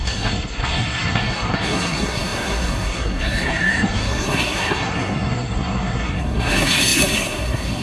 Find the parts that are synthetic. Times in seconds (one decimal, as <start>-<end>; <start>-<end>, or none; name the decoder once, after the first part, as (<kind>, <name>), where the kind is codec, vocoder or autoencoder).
0.0-7.8 (codec, SNAC)